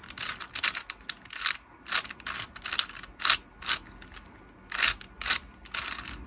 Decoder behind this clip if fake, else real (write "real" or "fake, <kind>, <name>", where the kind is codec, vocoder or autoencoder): real